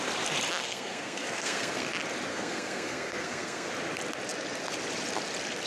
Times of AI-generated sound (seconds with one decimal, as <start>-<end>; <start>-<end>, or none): 0.6-1.9; 2.3-3.7